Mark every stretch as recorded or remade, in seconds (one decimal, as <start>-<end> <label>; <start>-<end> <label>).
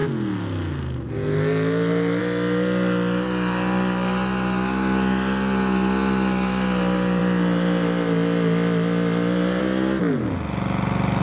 0.0-11.2 recorded